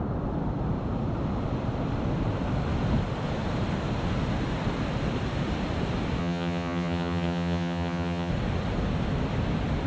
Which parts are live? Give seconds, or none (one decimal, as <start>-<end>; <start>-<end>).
0.0-6.2; 8.3-9.9